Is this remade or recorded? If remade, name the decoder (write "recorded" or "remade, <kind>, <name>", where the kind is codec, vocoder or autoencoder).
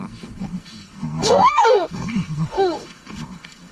remade, codec, SNAC